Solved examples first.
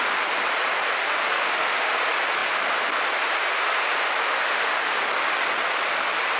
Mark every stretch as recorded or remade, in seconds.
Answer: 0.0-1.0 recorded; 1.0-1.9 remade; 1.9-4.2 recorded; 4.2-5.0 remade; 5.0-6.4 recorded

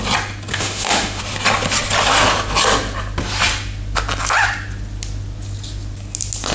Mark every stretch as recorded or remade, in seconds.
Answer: 0.0-0.5 recorded; 0.5-1.2 remade; 1.2-6.5 recorded

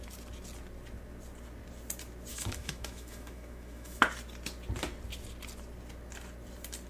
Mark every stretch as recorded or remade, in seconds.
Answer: 0.0-2.3 recorded; 2.3-4.0 remade; 4.0-6.9 recorded

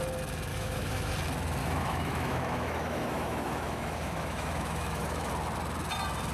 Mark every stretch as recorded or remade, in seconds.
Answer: 0.0-0.5 recorded; 0.5-1.1 remade; 1.1-1.6 recorded; 1.6-5.3 remade; 5.3-6.3 recorded

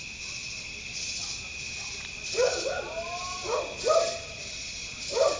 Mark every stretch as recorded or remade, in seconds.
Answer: 0.0-5.4 recorded